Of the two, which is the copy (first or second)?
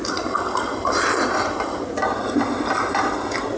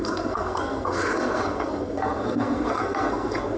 second